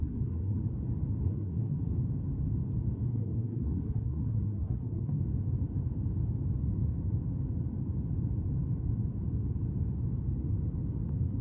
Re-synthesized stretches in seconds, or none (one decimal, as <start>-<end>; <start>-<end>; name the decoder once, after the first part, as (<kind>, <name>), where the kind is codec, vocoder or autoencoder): 0.0-0.6 (codec, SNAC); 1.2-1.8; 3.1-5.2